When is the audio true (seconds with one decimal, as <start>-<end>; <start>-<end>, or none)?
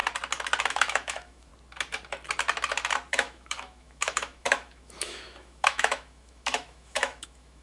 0.0-0.7; 1.5-3.1